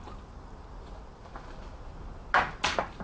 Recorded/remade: recorded